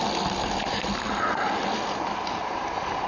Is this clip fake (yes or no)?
no